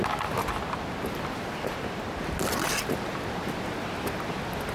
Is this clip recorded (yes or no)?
yes